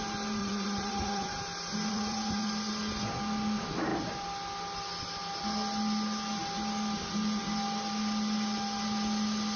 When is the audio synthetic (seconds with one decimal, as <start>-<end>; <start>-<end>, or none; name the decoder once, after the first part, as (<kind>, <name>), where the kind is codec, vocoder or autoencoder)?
0.4-1.4 (vocoder, Vocos); 1.9-2.5